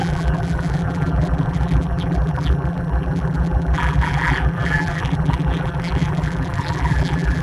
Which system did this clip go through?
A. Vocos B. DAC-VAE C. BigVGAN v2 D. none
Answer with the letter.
C